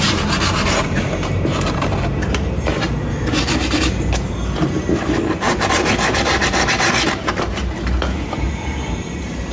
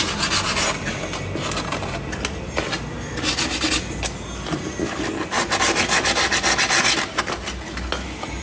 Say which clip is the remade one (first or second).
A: first